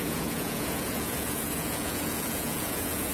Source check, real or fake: fake